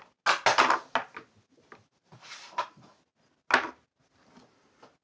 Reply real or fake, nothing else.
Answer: real